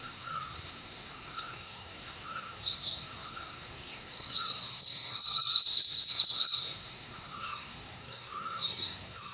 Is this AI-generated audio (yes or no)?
yes